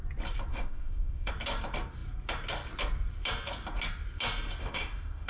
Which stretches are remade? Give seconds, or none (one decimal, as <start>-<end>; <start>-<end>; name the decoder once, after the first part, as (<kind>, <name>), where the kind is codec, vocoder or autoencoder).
0.5-1.3 (autoencoder, DAC-VAE); 4.6-5.3